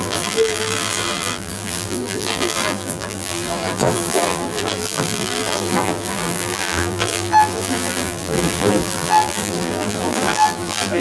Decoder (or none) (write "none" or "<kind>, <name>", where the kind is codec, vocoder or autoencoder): vocoder, BigVGAN v2